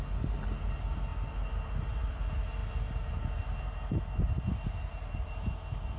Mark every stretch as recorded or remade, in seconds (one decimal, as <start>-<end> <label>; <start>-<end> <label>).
0.0-6.0 recorded